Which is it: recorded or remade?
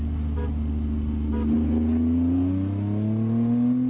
recorded